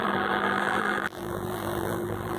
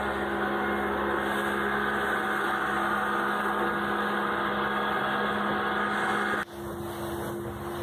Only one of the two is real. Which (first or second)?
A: second